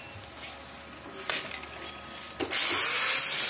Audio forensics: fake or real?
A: real